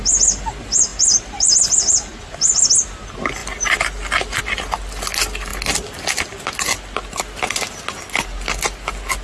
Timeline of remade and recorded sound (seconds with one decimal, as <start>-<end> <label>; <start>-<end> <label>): 0.0-9.2 recorded

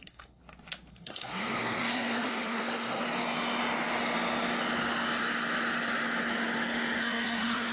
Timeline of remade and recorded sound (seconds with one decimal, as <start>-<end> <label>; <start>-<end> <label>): 0.0-0.4 remade; 0.4-0.9 recorded; 0.9-3.0 remade; 3.0-7.0 recorded; 7.0-7.7 remade

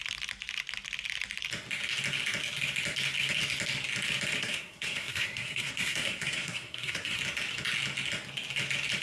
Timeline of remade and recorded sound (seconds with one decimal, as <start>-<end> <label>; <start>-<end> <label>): 0.0-4.4 recorded; 4.4-7.2 remade; 7.2-9.0 recorded

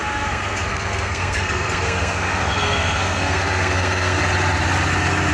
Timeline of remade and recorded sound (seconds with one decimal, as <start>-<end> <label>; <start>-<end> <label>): 0.0-4.2 remade; 4.2-5.3 recorded

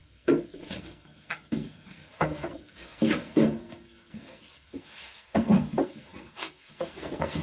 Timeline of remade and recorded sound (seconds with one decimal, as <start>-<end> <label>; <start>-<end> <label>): 0.0-7.4 remade

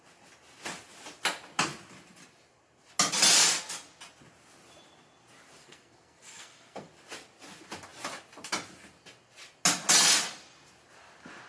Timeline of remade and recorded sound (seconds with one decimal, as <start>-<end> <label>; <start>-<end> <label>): 0.0-5.6 recorded; 5.6-6.9 remade; 6.9-11.5 recorded